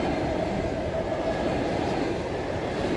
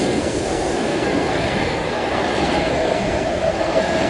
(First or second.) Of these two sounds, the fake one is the second